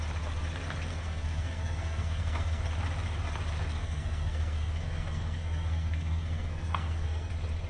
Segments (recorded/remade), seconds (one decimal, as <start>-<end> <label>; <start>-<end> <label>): 0.0-0.9 recorded; 0.9-2.6 remade; 2.6-3.8 recorded; 3.8-7.3 remade; 7.3-7.7 recorded